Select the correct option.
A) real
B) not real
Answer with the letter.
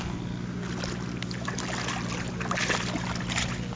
A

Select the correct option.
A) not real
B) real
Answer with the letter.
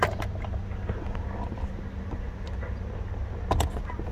B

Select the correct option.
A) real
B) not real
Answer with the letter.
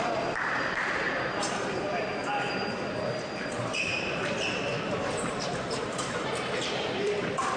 B